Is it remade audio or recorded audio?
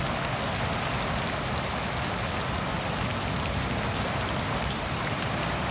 recorded